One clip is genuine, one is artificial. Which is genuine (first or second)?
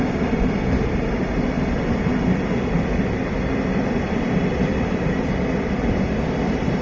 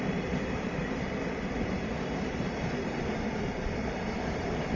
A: first